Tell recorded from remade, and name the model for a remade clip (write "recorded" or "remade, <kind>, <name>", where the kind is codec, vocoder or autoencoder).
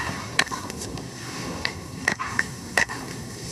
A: remade, codec, SNAC